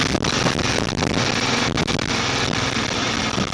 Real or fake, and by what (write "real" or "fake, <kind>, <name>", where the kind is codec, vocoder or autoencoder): real